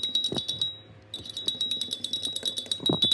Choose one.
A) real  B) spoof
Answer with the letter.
A